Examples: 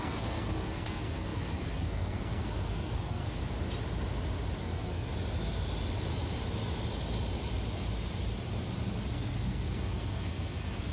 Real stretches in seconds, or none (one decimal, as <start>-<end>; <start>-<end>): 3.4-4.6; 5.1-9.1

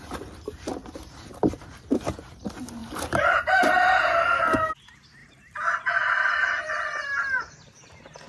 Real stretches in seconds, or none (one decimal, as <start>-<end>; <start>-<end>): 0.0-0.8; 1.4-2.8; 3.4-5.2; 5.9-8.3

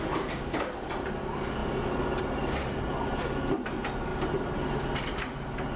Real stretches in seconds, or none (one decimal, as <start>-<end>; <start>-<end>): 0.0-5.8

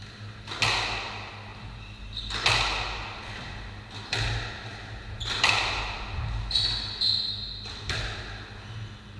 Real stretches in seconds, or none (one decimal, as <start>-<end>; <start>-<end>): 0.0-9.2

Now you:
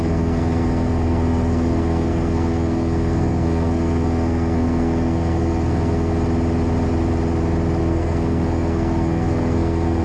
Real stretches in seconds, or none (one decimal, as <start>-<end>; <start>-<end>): 6.1-7.8